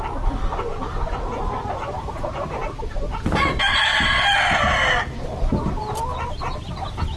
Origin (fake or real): real